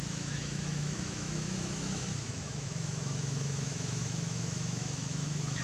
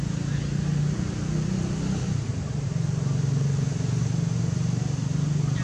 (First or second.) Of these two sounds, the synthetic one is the first